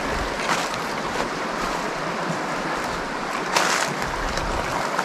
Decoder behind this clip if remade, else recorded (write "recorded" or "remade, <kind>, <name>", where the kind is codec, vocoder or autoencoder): recorded